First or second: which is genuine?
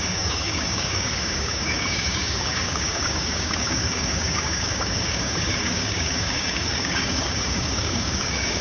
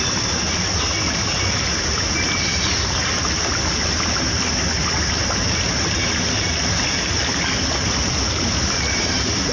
second